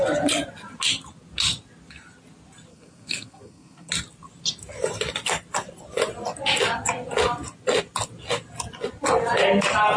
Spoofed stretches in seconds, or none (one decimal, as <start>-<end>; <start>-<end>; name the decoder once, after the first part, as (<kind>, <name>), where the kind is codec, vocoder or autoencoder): 2.7-3.9 (codec, SNAC)